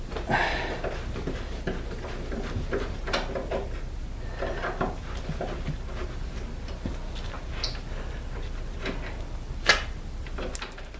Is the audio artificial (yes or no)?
no